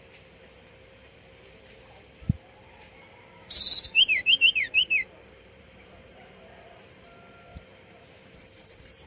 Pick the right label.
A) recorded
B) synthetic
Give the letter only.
B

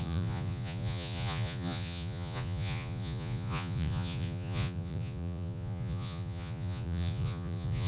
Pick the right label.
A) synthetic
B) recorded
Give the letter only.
A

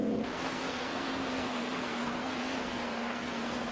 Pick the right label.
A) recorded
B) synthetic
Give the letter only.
B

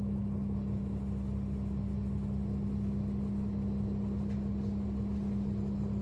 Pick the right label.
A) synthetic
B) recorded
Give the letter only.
B